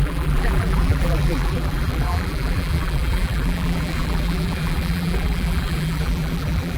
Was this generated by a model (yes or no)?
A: yes